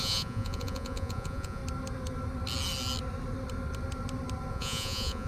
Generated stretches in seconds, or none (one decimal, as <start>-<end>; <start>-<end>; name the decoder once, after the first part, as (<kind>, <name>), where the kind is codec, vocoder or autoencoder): 0.0-1.6 (vocoder, Vocos); 4.5-5.3

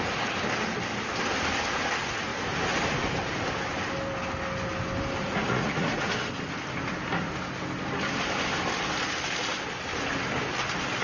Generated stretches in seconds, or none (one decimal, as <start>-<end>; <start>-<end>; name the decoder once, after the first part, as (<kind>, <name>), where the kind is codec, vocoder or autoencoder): 5.2-6.1 (vocoder, Vocos)

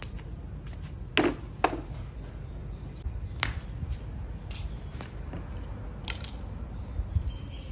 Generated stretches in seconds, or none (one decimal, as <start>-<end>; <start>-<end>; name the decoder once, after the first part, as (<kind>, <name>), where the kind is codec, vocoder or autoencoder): none

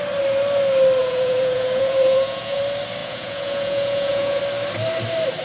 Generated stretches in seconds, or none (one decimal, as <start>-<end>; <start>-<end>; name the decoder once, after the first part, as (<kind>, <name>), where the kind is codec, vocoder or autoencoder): 1.0-2.6 (vocoder, Vocos); 3.0-4.4

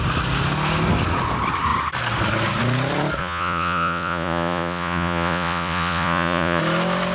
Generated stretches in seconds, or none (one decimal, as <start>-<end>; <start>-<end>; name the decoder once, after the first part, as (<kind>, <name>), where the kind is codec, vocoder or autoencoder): 3.2-6.6 (vocoder, Vocos)

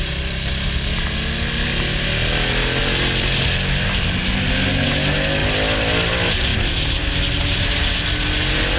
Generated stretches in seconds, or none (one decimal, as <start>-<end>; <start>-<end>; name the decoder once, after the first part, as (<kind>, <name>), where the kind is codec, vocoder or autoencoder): none

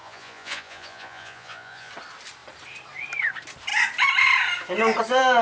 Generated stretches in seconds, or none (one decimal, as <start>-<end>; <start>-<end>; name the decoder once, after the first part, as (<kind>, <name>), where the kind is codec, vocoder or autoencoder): 0.0-1.9 (vocoder, Vocos)

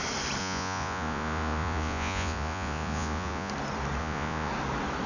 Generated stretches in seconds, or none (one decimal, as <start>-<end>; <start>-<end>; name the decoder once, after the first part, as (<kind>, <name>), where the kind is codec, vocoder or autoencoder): 0.4-3.5 (vocoder, Vocos); 4.0-4.5